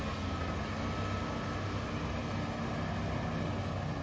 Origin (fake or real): real